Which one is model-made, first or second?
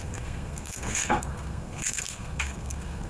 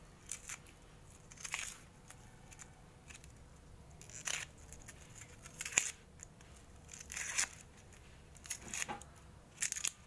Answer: first